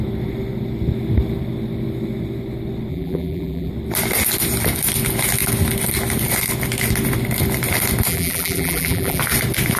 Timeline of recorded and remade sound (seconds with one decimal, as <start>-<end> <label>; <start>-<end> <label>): 0.0-2.9 recorded; 2.9-3.7 remade; 3.7-8.1 recorded; 8.1-9.2 remade; 9.2-9.8 recorded